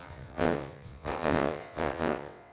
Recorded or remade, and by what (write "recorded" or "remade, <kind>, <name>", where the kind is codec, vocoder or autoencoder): remade, vocoder, WaveNeXt